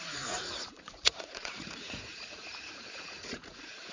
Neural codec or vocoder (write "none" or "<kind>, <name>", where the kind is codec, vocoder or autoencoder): vocoder, Vocos